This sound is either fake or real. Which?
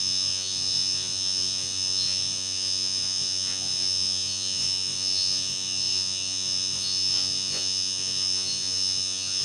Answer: fake